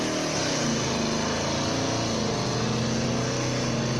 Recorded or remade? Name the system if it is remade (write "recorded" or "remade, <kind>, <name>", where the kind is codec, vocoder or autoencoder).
recorded